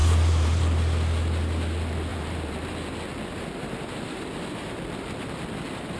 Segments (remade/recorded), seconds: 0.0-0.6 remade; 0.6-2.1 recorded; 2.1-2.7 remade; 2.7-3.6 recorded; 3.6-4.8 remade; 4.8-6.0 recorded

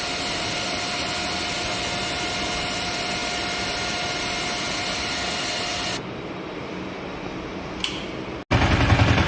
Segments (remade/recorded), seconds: 0.0-9.3 recorded